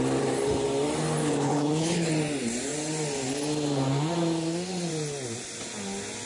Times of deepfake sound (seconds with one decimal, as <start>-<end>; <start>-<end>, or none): 1.2-2.1